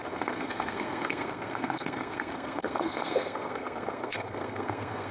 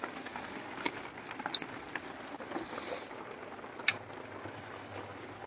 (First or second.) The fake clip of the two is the first